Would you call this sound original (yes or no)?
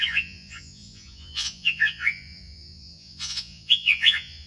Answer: no